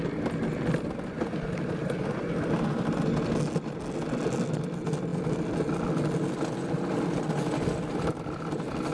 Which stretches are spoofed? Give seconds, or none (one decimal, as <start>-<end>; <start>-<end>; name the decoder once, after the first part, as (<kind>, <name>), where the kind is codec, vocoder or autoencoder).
none